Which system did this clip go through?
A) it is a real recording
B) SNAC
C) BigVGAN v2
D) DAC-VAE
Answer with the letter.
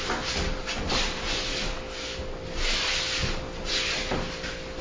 A